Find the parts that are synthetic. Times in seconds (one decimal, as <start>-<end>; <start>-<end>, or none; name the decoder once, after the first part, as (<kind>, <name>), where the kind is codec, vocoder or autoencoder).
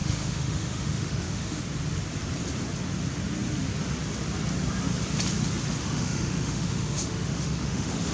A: 0.0-1.6 (autoencoder, DAC-VAE); 5.8-8.1